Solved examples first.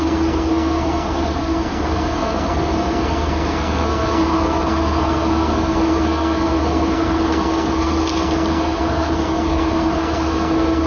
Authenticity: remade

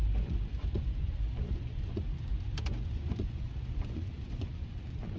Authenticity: remade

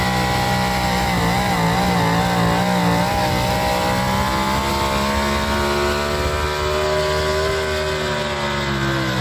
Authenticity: recorded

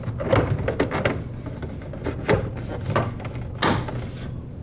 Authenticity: recorded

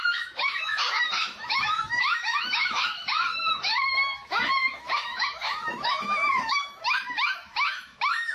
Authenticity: remade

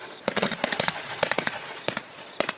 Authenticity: remade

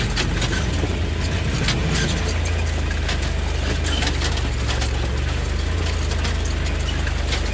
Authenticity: recorded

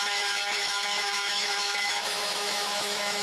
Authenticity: remade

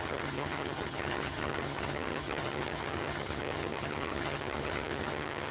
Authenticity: remade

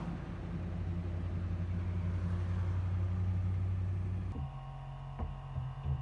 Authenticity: recorded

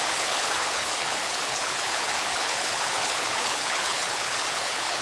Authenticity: remade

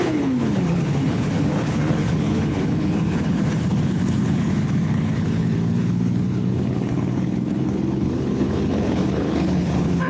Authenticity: remade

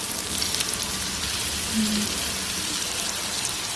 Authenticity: remade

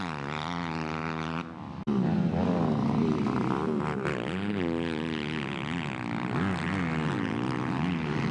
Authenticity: recorded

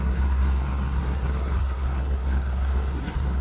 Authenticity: remade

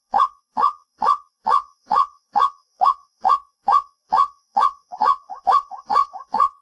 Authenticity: remade